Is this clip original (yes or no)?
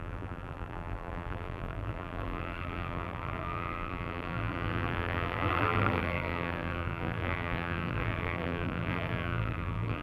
no